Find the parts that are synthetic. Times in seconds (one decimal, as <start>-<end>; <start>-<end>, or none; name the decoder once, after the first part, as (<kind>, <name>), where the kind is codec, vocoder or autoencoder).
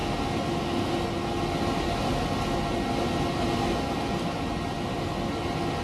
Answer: none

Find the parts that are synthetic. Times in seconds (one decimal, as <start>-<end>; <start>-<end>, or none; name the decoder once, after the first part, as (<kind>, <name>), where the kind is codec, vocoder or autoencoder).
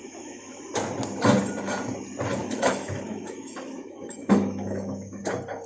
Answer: 0.0-0.6 (autoencoder, DAC-VAE); 2.4-5.2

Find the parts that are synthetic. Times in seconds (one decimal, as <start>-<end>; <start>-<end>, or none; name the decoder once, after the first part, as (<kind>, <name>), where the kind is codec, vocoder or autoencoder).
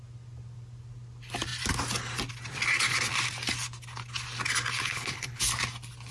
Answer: 4.8-5.4 (codec, HILCodec)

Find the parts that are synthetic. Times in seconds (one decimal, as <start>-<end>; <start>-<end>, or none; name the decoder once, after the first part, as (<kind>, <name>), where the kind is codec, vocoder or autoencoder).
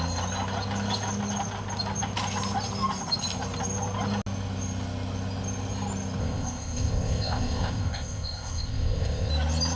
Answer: 6.2-9.3 (codec, ZipCodec)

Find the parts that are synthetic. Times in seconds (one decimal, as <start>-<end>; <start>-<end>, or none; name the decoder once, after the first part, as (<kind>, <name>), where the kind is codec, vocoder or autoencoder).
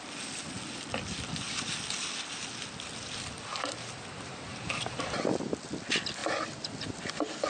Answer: 3.5-4.9 (vocoder, BigVGAN v2)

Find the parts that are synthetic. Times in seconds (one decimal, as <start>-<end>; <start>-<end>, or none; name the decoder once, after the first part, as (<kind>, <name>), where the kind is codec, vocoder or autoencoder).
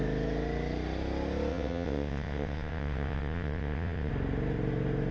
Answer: 1.5-4.1 (vocoder, WaveNeXt)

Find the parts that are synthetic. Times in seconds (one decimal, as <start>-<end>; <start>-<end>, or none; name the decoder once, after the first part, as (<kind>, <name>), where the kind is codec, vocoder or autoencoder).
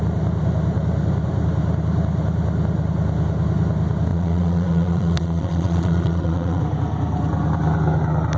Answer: 4.1-6.6 (vocoder, Vocos)